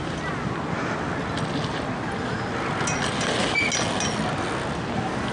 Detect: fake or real real